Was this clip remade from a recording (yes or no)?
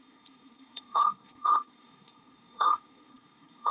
yes